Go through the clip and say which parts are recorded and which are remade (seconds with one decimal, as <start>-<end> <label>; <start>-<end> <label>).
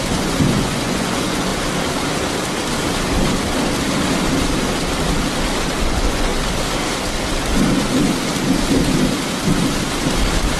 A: 0.0-1.5 remade; 1.5-5.8 recorded; 5.8-6.3 remade; 6.3-10.6 recorded